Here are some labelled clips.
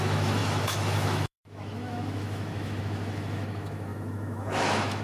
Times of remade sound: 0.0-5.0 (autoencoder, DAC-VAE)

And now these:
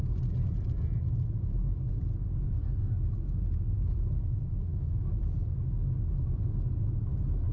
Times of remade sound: 4.7-5.2 (autoencoder, DAC-VAE)

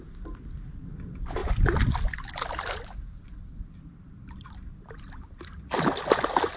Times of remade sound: none

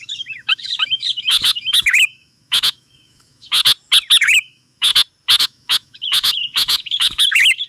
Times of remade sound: 0.0-3.6 (autoencoder, DAC-VAE); 4.2-4.9; 5.4-7.7

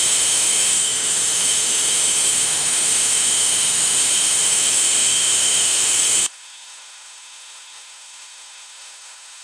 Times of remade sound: 0.0-9.4 (autoencoder, DAC-VAE)

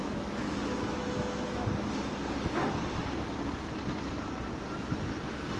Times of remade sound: 0.0-1.7 (autoencoder, DAC-VAE)